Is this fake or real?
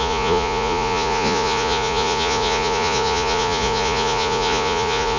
fake